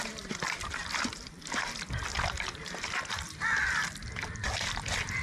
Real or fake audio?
fake